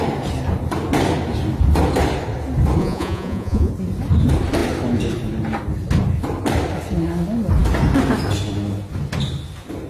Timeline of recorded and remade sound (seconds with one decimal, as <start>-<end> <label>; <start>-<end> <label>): 0.0-2.8 recorded; 2.8-3.7 remade; 3.7-9.9 recorded